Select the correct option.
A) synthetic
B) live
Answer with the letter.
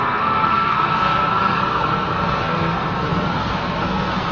A